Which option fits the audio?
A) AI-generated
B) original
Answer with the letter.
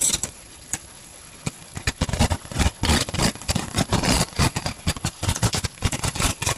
A